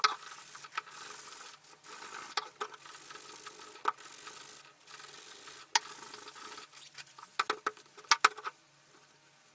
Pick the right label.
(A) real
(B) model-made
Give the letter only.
A